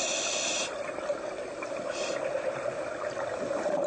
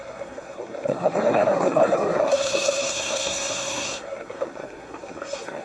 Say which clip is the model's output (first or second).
second